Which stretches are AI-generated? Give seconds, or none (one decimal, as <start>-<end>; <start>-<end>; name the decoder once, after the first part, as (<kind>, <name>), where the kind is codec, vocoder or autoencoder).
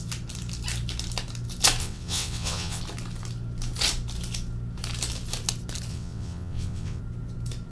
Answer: 1.8-2.8 (vocoder, WaveNeXt); 5.9-7.0